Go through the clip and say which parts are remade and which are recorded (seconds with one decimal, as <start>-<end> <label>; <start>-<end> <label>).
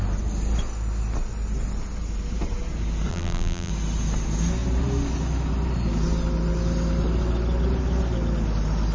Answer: 0.0-3.1 recorded; 3.1-3.7 remade; 3.7-8.9 recorded